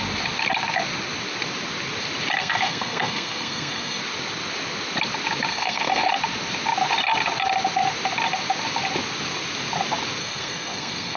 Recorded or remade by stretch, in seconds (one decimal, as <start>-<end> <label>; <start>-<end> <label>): 0.0-2.4 recorded; 2.4-4.0 remade; 4.0-5.5 recorded; 5.5-6.1 remade; 6.1-10.2 recorded; 10.2-11.2 remade